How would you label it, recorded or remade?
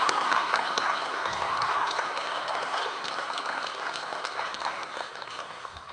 remade